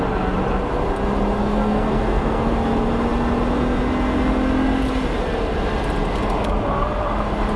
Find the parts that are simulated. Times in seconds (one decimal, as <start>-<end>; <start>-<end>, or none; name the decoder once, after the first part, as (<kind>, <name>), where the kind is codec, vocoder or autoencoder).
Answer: 1.4-2.5 (codec, SNAC)